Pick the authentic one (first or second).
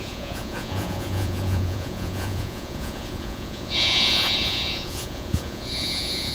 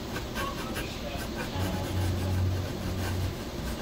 second